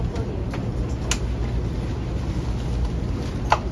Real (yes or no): yes